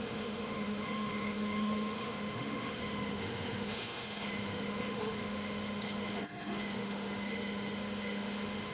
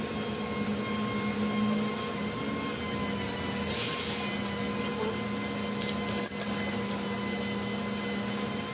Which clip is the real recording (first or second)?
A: second